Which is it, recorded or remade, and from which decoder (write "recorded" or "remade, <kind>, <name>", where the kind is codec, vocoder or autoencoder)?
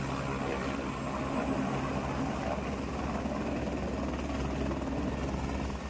recorded